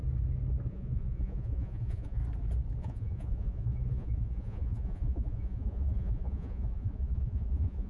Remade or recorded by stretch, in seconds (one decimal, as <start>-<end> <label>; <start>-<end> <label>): 0.0-0.7 recorded; 0.7-2.2 remade; 2.2-2.8 recorded; 2.8-7.9 remade